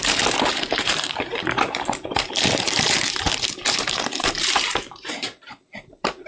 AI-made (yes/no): yes